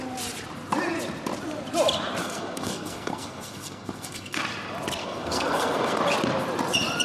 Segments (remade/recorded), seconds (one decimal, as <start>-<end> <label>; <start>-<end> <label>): 0.0-2.2 recorded; 2.2-4.4 remade; 4.4-5.0 recorded; 5.0-6.0 remade; 6.0-7.0 recorded